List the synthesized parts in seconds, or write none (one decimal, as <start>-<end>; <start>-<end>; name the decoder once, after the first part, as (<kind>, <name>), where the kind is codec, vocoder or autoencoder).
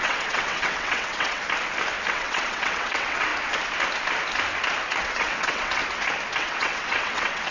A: 0.0-1.4 (vocoder, WaveNeXt); 2.1-3.3; 5.0-5.8; 6.4-7.5